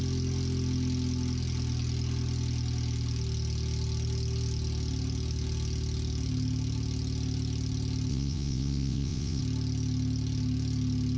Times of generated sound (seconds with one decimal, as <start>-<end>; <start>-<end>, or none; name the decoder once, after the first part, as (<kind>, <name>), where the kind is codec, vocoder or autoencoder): 8.1-9.4 (vocoder, WaveNeXt)